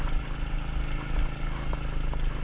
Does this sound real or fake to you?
real